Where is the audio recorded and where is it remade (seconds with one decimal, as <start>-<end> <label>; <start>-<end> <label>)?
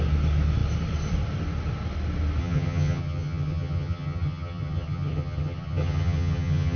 0.0-2.4 recorded; 2.4-6.8 remade